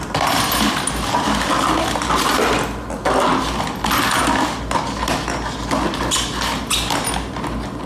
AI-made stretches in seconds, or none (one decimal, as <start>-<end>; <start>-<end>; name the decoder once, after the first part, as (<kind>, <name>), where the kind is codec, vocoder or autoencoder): none